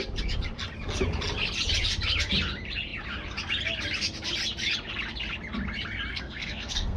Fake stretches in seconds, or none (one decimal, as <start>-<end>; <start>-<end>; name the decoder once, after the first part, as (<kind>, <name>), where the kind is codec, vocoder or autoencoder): 6.1-7.0 (codec, SNAC)

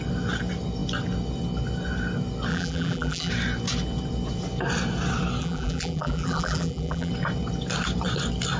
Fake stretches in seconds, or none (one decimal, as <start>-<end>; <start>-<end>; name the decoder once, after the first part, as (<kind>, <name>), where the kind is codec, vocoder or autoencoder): 2.5-3.3 (vocoder, BigVGAN v2); 5.4-7.1